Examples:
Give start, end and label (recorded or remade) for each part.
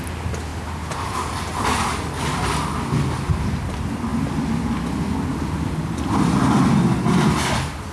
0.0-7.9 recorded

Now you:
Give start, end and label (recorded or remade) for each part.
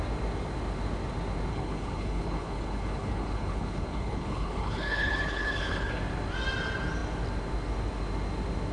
0.0-1.5 recorded; 1.5-5.9 remade; 5.9-8.7 recorded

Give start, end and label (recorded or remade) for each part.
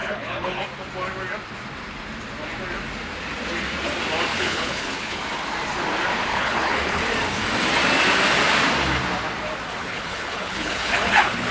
0.0-0.6 remade; 0.6-4.3 recorded; 4.3-5.2 remade; 5.2-6.3 recorded; 6.3-7.0 remade; 7.0-9.8 recorded; 9.8-11.5 remade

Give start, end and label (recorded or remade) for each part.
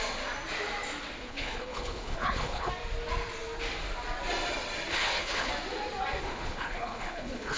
0.0-1.3 recorded; 1.3-2.7 remade; 2.7-4.9 recorded; 4.9-5.5 remade; 5.5-6.2 recorded; 6.2-7.6 remade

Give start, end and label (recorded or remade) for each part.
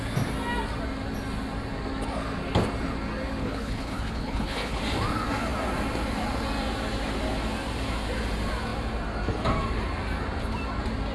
0.0-3.4 recorded; 3.4-4.8 remade; 4.8-11.1 recorded